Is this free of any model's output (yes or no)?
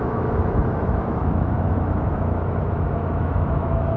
no